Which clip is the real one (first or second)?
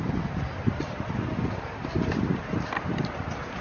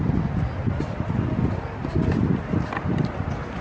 second